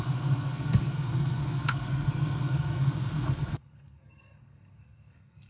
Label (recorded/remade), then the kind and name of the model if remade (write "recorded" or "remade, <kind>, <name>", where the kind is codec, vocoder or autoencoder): remade, codec, SNAC